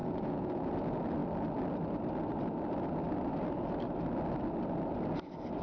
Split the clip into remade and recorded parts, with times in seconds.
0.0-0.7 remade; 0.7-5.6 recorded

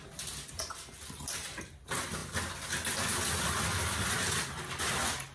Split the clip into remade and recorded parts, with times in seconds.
0.0-5.3 recorded

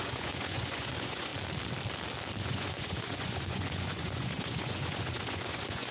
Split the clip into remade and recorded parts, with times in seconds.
0.0-1.3 remade; 1.3-2.4 recorded; 2.4-5.9 remade

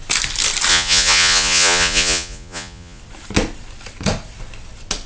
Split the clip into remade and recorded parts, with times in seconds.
0.0-0.7 recorded; 0.7-3.0 remade; 3.0-5.1 recorded

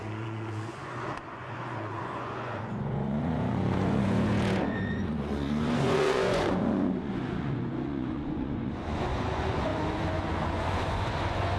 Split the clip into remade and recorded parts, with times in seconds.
0.0-11.6 remade